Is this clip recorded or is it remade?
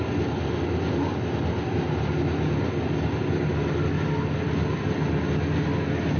recorded